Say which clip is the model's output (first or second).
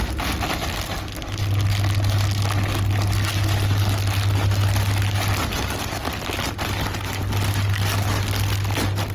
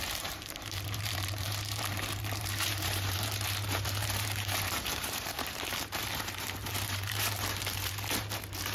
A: second